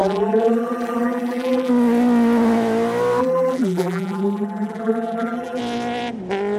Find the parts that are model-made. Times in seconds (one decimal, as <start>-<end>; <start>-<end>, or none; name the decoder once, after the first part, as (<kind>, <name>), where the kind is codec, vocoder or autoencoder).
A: 0.0-1.7 (vocoder, BigVGAN v2); 3.2-5.6